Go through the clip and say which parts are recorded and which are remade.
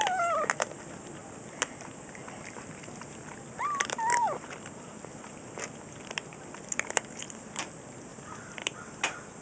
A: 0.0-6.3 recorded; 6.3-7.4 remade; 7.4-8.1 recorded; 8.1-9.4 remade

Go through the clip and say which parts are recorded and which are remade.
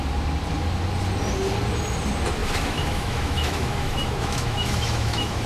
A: 0.0-2.4 recorded; 2.4-5.5 remade